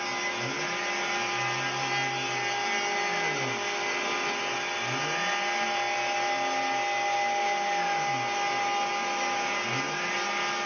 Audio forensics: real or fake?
real